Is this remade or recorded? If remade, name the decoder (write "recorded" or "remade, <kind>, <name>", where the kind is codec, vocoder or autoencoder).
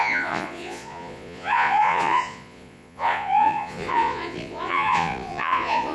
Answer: remade, vocoder, Vocos